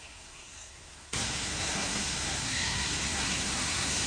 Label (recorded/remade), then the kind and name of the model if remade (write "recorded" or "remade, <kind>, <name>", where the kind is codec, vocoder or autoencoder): remade, codec, SNAC